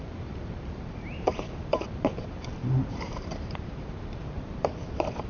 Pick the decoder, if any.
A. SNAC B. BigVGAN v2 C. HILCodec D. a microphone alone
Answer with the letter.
B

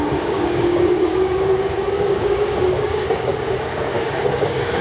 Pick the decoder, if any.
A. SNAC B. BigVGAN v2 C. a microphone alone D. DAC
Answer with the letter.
D